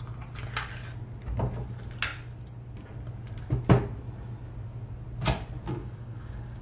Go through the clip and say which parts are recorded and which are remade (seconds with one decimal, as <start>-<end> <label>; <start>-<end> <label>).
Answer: 0.0-5.8 recorded; 5.8-6.6 remade